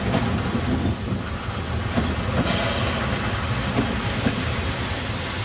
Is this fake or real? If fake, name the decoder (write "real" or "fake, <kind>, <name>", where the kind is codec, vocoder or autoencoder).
real